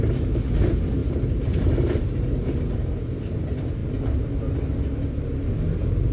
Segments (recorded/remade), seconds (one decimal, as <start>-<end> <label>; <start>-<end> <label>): 0.0-6.1 recorded